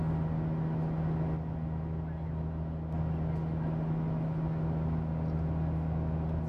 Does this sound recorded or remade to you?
recorded